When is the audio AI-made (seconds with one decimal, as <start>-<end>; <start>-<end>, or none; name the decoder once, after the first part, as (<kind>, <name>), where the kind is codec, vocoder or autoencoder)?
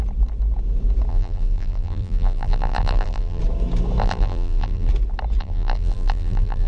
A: 1.1-3.4 (vocoder, BigVGAN v2); 4.0-4.9; 5.4-6.7